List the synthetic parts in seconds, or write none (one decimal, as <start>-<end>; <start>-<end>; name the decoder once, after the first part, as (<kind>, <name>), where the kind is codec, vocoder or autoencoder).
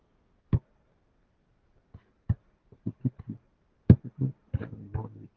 1.4-3.2 (vocoder, BigVGAN v2)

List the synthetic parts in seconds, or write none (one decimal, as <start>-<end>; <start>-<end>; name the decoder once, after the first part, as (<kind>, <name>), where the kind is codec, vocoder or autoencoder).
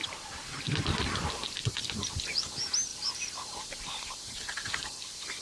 2.9-5.4 (vocoder, BigVGAN v2)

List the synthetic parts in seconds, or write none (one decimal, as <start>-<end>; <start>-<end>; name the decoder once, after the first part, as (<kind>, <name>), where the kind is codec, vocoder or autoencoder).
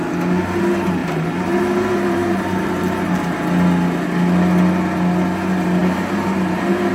1.0-3.4 (vocoder, BigVGAN v2); 5.8-6.9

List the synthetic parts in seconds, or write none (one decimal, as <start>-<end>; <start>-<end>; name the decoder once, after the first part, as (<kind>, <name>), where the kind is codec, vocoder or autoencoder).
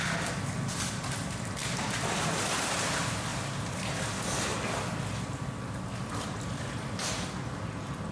1.6-2.5 (vocoder, BigVGAN v2); 3.3-4.0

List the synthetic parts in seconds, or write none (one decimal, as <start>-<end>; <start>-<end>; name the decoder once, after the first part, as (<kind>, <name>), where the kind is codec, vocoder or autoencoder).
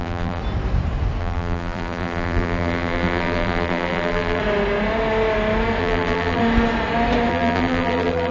0.0-0.4 (vocoder, BigVGAN v2); 1.2-4.4; 5.8-6.4; 7.3-8.3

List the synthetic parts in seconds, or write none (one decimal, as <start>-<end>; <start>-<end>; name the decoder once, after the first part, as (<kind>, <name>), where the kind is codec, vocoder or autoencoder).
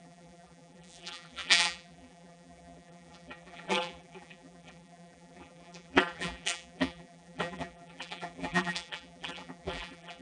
0.0-10.2 (vocoder, BigVGAN v2)